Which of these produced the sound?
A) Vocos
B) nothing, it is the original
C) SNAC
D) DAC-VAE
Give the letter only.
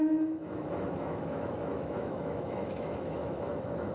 D